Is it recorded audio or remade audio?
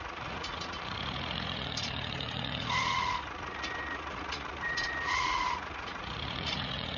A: remade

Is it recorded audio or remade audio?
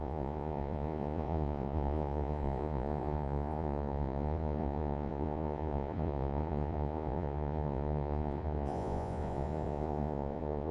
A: remade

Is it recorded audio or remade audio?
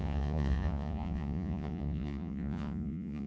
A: remade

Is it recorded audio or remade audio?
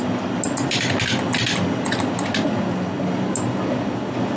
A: recorded